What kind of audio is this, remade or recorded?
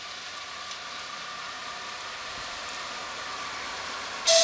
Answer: recorded